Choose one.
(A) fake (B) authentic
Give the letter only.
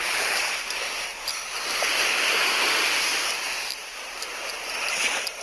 B